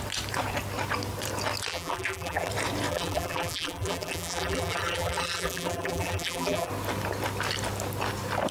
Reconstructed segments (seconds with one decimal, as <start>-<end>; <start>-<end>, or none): 1.7-2.5; 2.9-6.7